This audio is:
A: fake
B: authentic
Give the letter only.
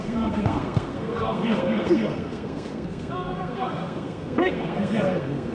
A